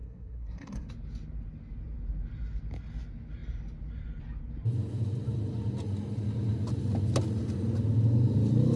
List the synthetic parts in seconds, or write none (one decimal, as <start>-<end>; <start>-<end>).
0.0-0.9